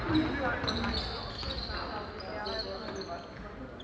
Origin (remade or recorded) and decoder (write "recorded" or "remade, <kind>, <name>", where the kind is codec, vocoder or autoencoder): recorded